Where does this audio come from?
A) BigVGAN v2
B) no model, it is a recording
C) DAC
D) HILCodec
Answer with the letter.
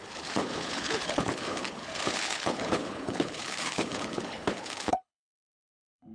D